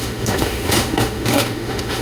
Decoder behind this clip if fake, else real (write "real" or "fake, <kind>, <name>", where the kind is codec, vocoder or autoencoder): fake, autoencoder, DAC-VAE